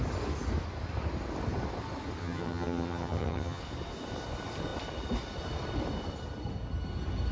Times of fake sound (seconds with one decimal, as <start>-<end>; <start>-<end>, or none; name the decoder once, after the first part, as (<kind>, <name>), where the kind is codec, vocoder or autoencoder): 2.2-3.6 (vocoder, HiFi-GAN)